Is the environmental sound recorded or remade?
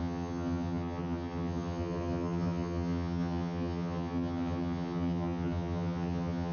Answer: remade